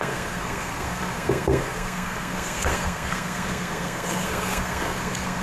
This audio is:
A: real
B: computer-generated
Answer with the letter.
B